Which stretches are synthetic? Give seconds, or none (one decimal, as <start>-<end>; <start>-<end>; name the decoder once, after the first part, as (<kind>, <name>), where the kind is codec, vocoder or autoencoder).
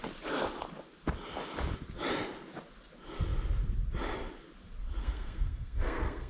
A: 5.0-6.3 (codec, SNAC)